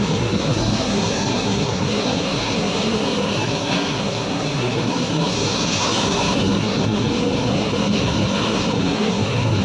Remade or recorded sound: remade